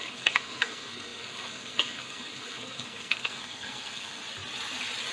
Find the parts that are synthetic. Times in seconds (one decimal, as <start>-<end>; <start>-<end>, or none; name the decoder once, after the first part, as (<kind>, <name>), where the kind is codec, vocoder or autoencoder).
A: 0.0-4.2 (codec, SNAC)